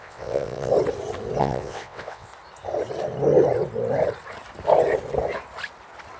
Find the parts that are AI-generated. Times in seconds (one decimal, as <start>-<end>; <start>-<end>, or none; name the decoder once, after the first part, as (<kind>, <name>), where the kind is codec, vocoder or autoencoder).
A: 0.0-0.7 (vocoder, WaveNeXt); 1.4-2.3